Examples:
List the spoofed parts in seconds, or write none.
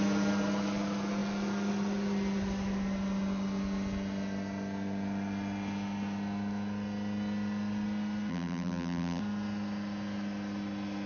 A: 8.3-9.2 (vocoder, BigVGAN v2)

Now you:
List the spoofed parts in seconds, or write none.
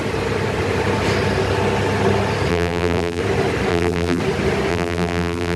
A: 2.5-3.2 (vocoder, BigVGAN v2); 3.7-4.2; 4.7-5.6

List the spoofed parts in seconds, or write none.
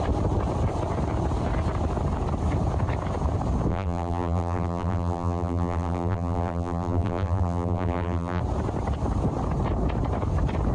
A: 3.7-8.4 (vocoder, BigVGAN v2)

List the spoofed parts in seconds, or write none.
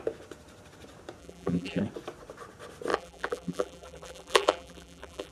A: 1.2-1.8 (vocoder, BigVGAN v2); 2.9-5.3